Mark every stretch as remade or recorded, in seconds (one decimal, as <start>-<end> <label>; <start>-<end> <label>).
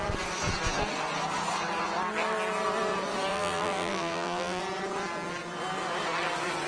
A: 0.0-3.3 recorded; 3.3-4.6 remade; 4.6-6.7 recorded